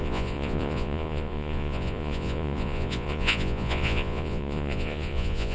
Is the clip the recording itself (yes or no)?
no